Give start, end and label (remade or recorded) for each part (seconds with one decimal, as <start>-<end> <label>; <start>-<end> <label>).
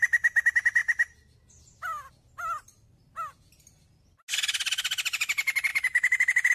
0.0-6.5 recorded